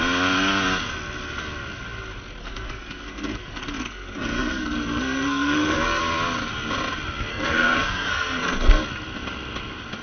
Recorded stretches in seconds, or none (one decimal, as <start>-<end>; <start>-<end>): 0.0-2.4; 6.0-7.3; 8.8-10.0